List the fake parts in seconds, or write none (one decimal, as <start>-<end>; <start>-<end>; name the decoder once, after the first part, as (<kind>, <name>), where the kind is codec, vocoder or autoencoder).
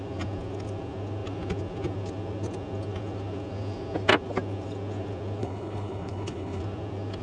5.4-6.6 (codec, HILCodec)